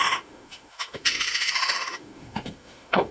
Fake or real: fake